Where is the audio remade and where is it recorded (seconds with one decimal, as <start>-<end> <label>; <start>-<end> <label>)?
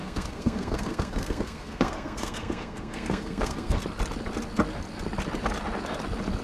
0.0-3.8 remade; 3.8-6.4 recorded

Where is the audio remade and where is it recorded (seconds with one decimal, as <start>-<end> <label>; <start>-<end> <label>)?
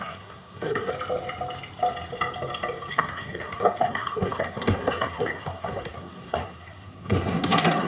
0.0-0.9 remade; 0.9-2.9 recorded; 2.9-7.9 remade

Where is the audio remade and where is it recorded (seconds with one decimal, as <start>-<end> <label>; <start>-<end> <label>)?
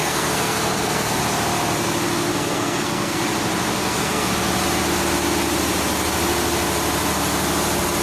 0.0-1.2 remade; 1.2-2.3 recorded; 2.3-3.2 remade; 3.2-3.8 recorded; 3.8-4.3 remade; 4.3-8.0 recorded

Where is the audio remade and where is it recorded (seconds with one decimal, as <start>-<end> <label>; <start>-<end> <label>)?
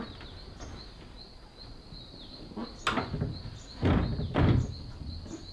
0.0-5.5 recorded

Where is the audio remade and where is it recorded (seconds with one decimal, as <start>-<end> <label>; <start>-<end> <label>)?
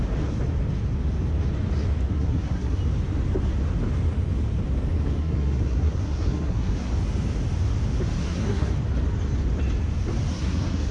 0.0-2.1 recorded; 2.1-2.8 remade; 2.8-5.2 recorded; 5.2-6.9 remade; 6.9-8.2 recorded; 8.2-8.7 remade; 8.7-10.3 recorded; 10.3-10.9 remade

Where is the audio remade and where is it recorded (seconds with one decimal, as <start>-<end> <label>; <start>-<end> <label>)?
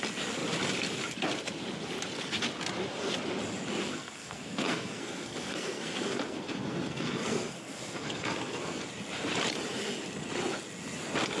0.0-3.9 recorded; 3.9-8.8 remade; 8.8-11.4 recorded